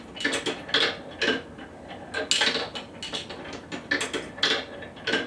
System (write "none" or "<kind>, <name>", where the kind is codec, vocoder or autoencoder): none